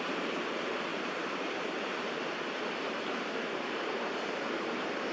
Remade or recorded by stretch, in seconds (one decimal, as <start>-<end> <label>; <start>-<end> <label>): 0.0-5.1 remade